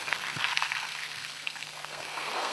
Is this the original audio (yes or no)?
no